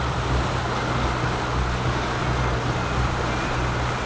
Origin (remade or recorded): recorded